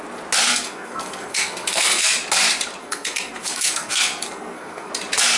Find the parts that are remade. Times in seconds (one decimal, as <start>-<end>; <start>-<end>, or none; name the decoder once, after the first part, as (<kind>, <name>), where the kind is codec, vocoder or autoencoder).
0.5-2.1 (codec, SNAC); 2.8-4.9